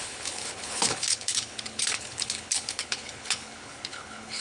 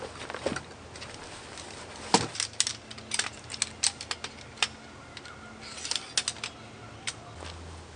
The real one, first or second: second